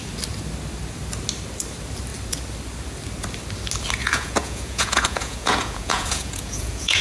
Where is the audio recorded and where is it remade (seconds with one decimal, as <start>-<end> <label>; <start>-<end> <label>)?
0.0-4.0 recorded; 4.0-7.0 remade